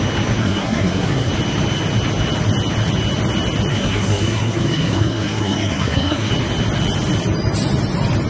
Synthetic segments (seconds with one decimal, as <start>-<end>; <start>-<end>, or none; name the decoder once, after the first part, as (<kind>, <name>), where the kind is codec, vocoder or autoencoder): 0.4-1.3 (codec, SNAC); 3.7-6.3